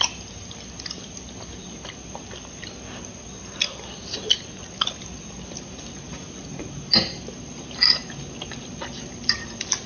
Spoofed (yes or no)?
no